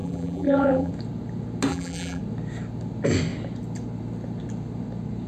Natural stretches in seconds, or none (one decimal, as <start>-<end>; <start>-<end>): 0.9-1.7; 2.2-5.3